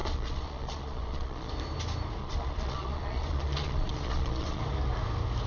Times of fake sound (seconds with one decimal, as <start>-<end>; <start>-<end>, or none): 0.0-1.5; 2.2-4.6